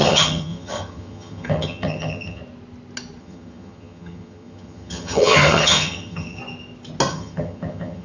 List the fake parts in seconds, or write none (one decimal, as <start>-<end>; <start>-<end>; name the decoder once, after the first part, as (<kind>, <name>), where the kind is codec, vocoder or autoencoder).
0.0-2.4 (vocoder, HiFi-GAN); 3.2-6.4; 7.1-8.0